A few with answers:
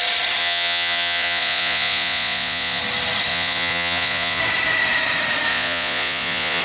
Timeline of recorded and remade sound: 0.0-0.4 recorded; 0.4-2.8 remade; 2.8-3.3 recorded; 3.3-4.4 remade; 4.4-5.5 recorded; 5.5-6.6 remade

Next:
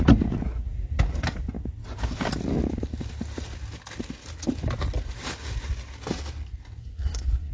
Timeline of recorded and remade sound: 0.0-6.8 recorded; 6.8-7.5 remade

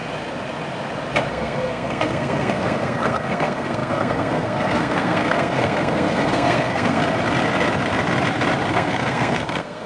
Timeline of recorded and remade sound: 0.0-1.3 recorded; 1.3-7.0 remade; 7.0-8.7 recorded; 8.7-9.9 remade

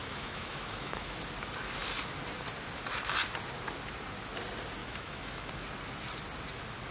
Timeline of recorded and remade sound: 0.0-1.2 remade; 1.2-4.8 recorded; 4.8-5.5 remade; 5.5-6.9 recorded

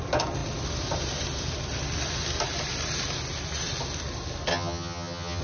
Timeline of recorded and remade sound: 0.0-4.5 recorded; 4.5-5.4 remade

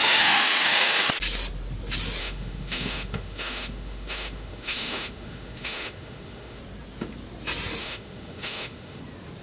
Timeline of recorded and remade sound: 0.0-1.1 remade; 1.1-2.2 recorded; 2.2-6.6 remade; 6.6-7.8 recorded; 7.8-9.0 remade; 9.0-9.4 recorded